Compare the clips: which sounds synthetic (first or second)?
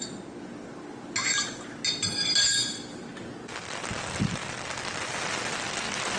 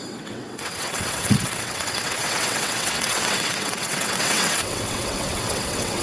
second